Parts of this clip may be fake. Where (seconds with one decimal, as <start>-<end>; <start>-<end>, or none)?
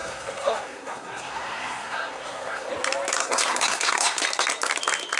0.0-2.7; 3.2-4.2